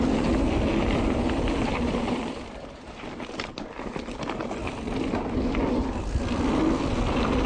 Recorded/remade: recorded